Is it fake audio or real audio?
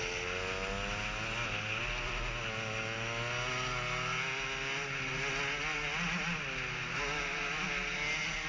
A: real